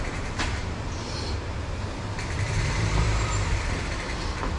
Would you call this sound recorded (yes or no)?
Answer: no